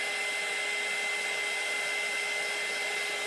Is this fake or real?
real